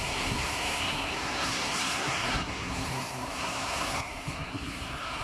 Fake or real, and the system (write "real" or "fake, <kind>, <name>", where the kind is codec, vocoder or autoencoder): fake, codec, SNAC